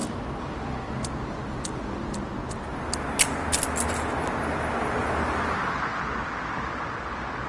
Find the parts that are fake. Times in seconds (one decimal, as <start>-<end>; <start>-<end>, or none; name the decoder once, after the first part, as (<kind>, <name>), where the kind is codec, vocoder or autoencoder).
0.0-2.3 (vocoder, BigVGAN v2); 5.0-7.5